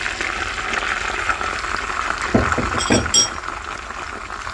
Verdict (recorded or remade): recorded